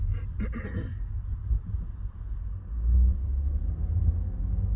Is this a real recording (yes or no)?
yes